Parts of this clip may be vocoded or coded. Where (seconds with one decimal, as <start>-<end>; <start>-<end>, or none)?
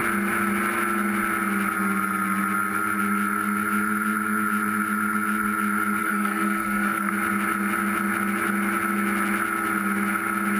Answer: 6.0-7.1